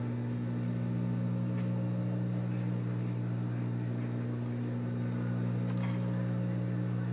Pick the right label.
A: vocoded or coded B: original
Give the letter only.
B